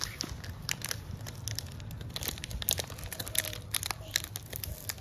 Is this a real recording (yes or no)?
yes